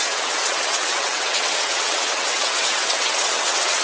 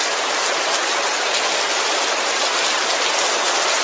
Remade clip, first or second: first